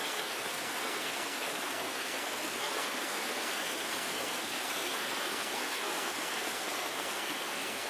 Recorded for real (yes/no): no